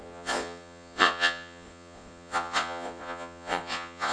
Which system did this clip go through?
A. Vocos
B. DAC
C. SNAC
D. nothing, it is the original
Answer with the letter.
A